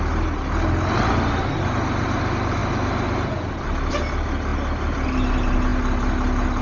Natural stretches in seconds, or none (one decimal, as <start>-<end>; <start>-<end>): 0.0-6.6